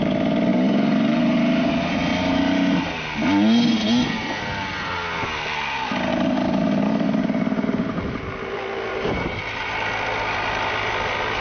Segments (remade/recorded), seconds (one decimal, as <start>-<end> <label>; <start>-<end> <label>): 0.0-0.5 recorded; 0.5-1.7 remade; 1.7-6.1 recorded; 6.1-8.2 remade; 8.2-8.9 recorded; 8.9-9.4 remade; 9.4-11.4 recorded